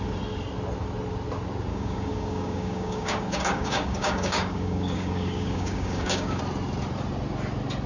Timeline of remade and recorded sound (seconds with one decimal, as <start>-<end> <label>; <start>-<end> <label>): 0.0-1.7 recorded; 1.7-6.4 remade; 6.4-7.9 recorded